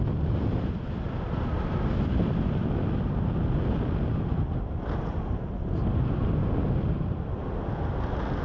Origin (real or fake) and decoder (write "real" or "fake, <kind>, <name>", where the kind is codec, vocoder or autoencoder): real